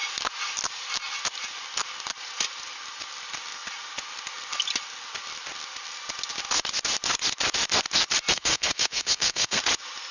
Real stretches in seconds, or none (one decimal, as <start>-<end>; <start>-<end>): 0.0-8.3; 9.6-10.1